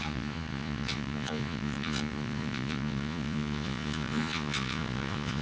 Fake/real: fake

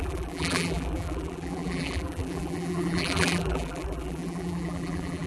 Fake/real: fake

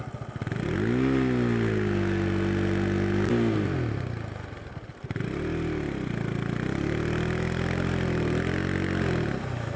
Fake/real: real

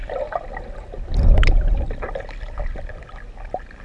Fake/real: real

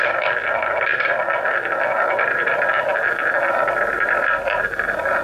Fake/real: real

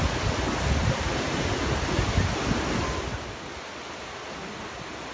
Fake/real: real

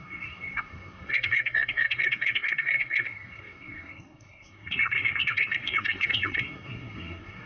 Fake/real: fake